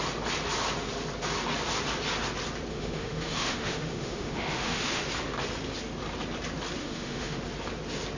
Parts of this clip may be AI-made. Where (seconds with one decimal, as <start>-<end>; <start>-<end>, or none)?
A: 2.7-5.0; 6.8-7.4